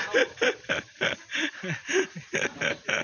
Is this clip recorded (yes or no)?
yes